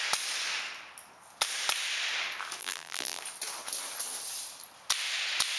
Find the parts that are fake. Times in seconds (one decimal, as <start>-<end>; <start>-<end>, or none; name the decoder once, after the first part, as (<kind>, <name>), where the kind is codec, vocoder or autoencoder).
2.6-3.2 (vocoder, BigVGAN v2)